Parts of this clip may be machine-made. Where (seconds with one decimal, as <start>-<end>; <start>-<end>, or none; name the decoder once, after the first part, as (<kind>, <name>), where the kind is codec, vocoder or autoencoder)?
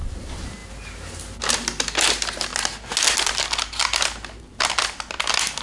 none